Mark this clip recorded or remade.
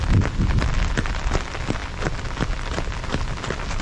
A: recorded